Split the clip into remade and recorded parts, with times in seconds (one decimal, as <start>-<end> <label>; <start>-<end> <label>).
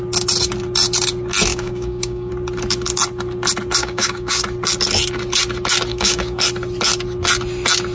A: 0.0-1.5 recorded; 1.5-2.3 remade; 2.3-3.8 recorded; 3.8-4.4 remade; 4.4-5.9 recorded; 5.9-6.4 remade; 6.4-7.9 recorded